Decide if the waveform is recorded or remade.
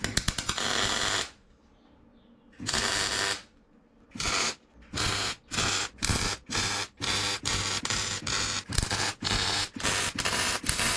recorded